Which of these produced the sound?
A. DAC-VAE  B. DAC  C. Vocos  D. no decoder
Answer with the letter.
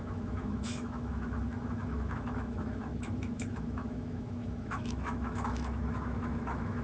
A